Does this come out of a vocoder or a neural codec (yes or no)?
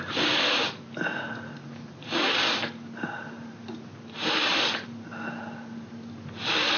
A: no